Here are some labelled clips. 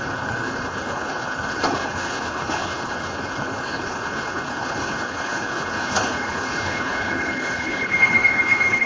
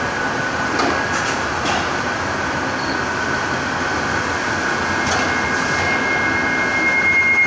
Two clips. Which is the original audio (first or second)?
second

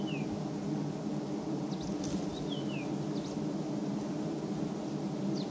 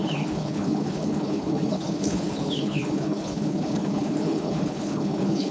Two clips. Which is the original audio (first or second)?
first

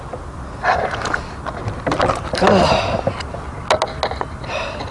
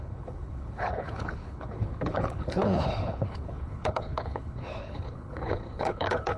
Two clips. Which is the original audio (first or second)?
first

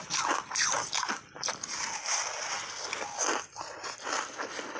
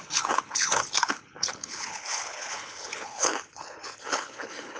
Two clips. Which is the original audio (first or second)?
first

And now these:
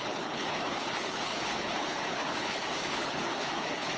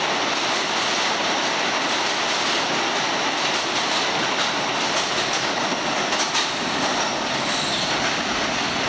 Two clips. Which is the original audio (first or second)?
second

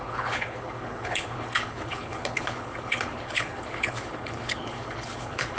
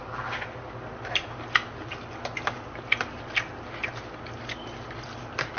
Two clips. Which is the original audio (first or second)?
second